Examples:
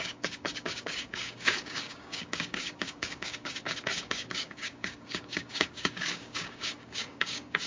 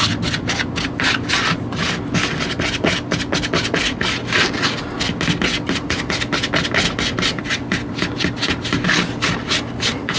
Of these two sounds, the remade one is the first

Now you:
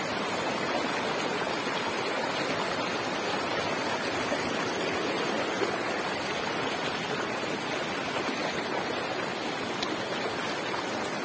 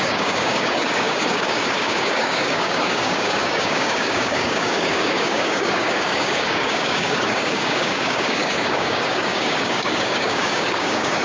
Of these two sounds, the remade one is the second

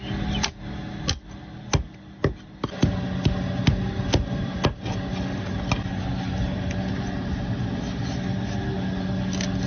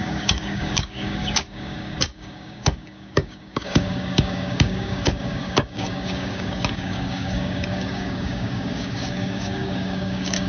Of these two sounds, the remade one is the second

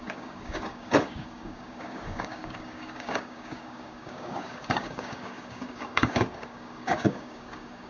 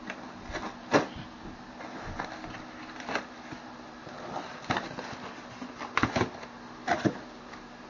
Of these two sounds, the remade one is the first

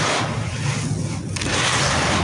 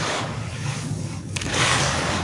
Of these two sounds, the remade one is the second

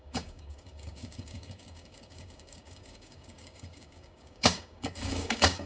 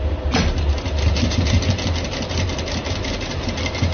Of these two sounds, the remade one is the first